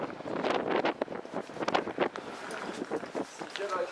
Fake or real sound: real